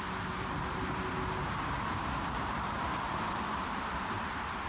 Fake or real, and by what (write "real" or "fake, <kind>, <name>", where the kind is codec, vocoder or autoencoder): fake, vocoder, BigVGAN v2